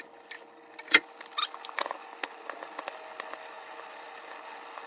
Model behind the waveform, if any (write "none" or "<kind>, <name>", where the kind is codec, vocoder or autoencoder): none